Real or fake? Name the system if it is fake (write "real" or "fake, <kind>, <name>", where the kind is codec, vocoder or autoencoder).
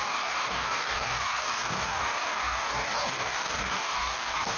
fake, codec, DAC